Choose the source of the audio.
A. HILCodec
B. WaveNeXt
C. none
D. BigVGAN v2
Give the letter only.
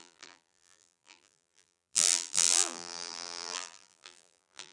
D